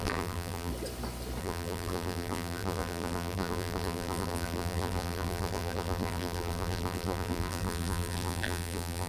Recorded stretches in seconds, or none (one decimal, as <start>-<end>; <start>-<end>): 0.7-1.4